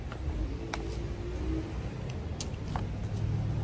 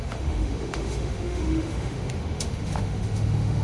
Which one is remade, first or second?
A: second